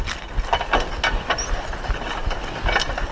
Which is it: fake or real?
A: real